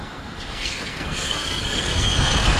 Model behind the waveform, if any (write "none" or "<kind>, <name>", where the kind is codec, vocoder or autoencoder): codec, SNAC